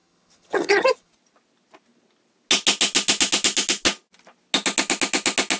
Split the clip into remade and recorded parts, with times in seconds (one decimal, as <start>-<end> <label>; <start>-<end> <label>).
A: 0.0-1.1 remade; 1.1-5.6 recorded